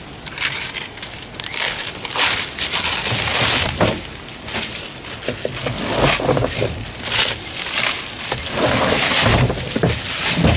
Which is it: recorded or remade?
recorded